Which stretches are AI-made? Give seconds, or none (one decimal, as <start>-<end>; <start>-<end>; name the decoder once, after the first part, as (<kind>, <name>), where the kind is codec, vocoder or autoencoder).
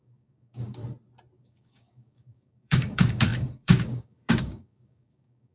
0.0-0.8 (codec, DAC); 1.4-5.5